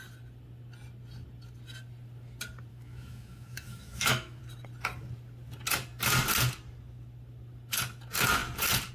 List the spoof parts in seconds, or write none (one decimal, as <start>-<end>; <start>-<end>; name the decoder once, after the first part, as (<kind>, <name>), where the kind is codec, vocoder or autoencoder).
2.7-4.4 (autoencoder, DAC-VAE)